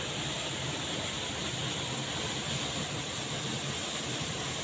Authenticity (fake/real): real